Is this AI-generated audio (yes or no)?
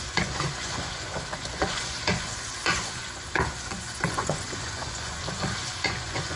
yes